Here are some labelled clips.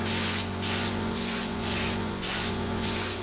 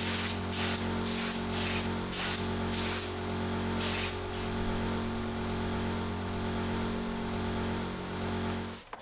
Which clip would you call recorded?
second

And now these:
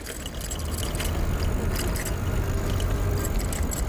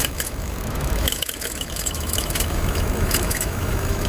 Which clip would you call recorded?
first